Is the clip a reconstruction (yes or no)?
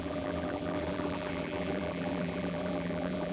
yes